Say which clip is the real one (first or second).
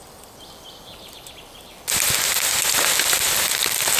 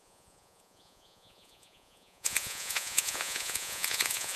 first